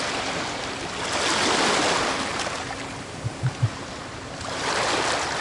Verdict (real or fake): real